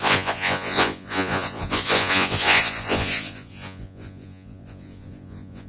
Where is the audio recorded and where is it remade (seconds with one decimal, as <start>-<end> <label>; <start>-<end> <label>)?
0.0-5.7 remade